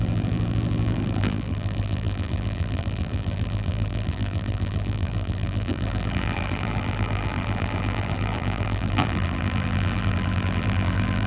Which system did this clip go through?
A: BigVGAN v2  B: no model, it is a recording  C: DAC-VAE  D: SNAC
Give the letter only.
A